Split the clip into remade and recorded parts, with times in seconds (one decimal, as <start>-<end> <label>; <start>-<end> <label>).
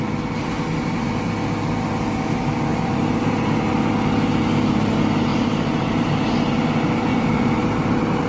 0.0-2.7 recorded; 2.7-3.7 remade; 3.7-5.3 recorded; 5.3-5.9 remade; 5.9-7.1 recorded; 7.1-8.3 remade